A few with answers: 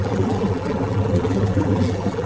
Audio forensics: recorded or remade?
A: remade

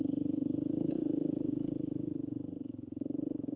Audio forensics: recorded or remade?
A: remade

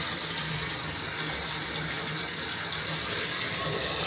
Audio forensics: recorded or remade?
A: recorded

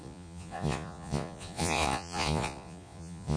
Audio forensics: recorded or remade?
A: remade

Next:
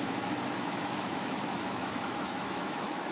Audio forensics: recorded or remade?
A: remade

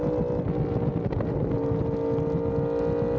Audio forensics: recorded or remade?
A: recorded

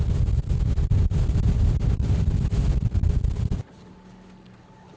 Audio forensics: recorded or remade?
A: recorded